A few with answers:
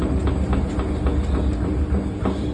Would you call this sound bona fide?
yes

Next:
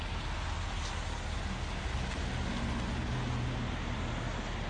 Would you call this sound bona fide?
yes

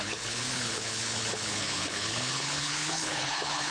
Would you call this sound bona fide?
no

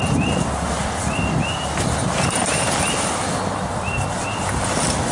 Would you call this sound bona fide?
yes